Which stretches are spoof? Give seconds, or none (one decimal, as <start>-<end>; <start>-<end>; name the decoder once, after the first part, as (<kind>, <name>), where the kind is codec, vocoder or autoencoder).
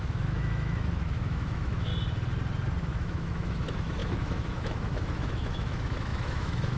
0.0-1.9 (autoencoder, DAC-VAE); 2.8-6.8